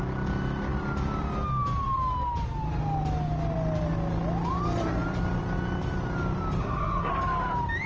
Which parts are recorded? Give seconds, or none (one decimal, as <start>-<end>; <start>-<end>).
0.0-6.6; 7.1-7.9